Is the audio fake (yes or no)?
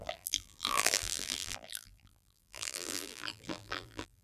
yes